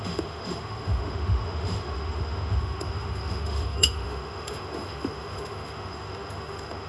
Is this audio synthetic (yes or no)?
yes